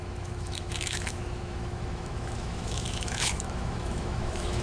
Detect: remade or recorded remade